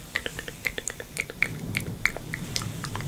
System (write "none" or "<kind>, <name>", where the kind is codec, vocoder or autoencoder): vocoder, BigVGAN v2